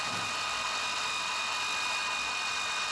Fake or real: real